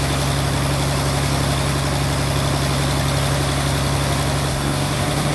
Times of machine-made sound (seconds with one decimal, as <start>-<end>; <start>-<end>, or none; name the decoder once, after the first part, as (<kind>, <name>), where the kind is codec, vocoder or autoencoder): 4.5-5.3 (codec, SNAC)

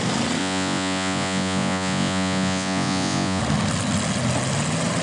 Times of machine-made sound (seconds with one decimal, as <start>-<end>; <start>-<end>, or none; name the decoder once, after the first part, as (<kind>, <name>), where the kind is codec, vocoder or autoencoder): 0.4-3.4 (vocoder, Vocos)

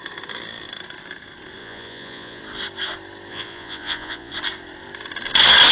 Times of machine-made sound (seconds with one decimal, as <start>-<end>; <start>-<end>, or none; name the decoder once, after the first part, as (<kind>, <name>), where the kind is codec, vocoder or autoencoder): 1.6-2.4 (vocoder, Vocos); 3.3-4.3